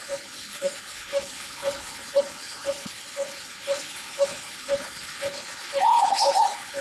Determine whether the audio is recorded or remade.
remade